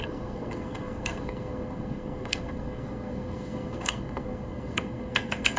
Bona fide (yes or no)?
no